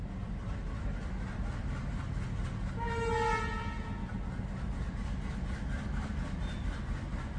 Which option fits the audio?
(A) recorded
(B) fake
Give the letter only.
A